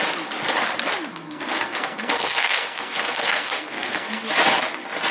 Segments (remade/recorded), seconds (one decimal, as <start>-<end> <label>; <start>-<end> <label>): 0.0-1.1 recorded; 1.1-4.2 remade; 4.2-5.1 recorded